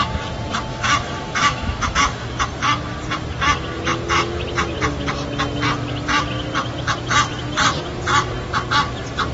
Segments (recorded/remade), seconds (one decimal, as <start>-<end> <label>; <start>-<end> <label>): 0.0-0.7 recorded; 0.7-2.4 remade; 2.4-9.3 recorded